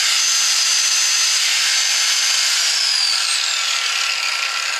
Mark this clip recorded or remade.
recorded